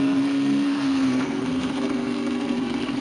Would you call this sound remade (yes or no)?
yes